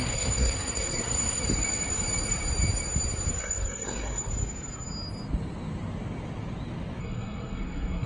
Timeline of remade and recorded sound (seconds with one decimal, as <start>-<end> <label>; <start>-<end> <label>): 0.0-1.4 remade; 1.4-3.4 recorded; 3.4-4.3 remade; 4.3-7.0 recorded; 7.0-8.1 remade